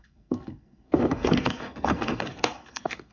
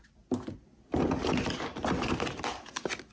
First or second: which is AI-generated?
first